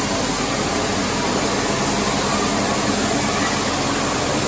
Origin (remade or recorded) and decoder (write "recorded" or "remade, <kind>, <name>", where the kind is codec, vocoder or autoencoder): recorded